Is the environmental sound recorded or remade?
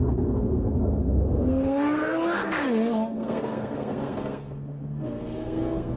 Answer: remade